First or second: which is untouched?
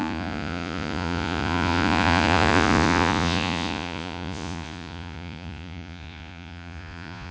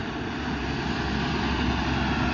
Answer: second